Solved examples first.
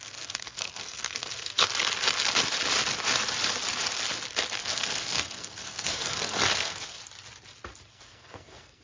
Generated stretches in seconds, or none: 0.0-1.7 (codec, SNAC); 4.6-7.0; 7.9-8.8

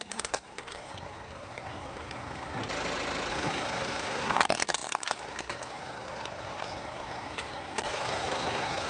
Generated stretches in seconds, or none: 0.0-2.6 (codec, SNAC); 3.3-8.9